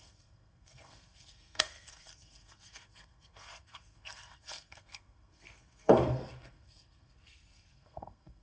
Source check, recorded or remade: remade